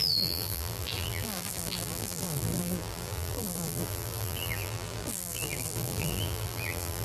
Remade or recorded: remade